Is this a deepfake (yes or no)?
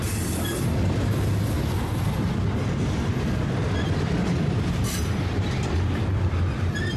no